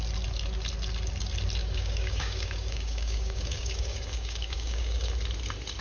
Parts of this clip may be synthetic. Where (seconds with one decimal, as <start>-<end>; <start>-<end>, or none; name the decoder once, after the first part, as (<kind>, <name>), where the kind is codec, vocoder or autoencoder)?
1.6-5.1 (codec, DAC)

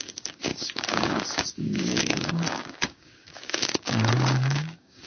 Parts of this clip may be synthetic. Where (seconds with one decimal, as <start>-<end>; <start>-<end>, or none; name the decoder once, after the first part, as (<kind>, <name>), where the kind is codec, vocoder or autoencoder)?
0.0-5.1 (codec, DAC)

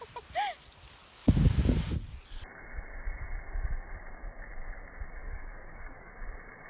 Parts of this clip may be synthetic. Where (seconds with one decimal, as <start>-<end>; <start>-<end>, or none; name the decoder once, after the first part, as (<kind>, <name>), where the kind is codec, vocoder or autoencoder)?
1.0-1.5 (codec, DAC); 5.2-6.1